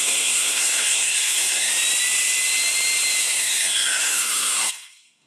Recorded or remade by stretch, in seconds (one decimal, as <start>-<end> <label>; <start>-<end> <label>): 0.0-1.7 remade; 1.7-3.2 recorded; 3.2-5.3 remade